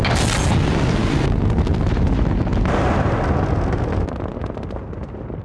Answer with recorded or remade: recorded